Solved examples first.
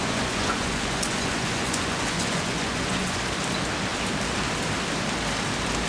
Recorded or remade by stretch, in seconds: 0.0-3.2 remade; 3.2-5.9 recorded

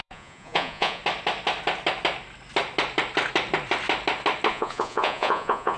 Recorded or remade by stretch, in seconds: 0.0-1.0 remade; 1.0-4.5 recorded; 4.5-5.8 remade

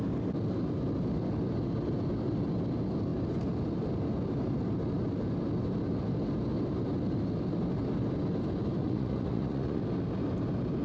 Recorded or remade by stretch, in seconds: 0.0-8.8 recorded; 8.8-9.8 remade; 9.8-10.8 recorded

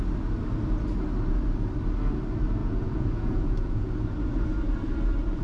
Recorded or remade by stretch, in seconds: 0.0-2.6 recorded; 2.6-3.9 remade; 3.9-5.4 recorded

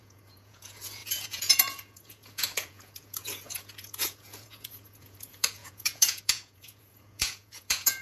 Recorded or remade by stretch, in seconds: 0.0-8.0 remade

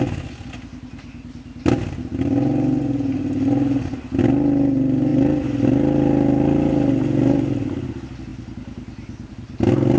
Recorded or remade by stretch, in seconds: 0.0-10.0 recorded